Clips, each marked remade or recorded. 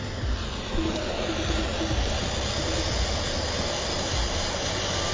recorded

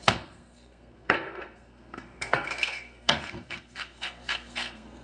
remade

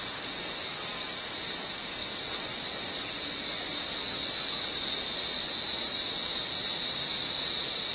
recorded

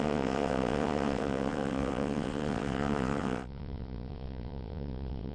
remade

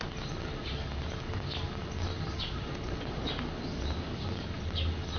recorded